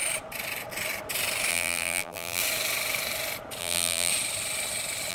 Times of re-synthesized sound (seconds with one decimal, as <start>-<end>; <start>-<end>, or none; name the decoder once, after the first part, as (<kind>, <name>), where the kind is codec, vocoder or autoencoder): 1.5-2.4 (vocoder, BigVGAN v2); 3.6-4.1